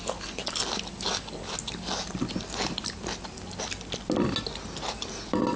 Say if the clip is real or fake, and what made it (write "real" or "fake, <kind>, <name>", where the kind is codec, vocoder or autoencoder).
real